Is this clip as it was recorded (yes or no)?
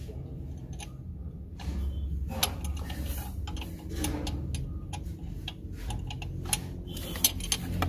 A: yes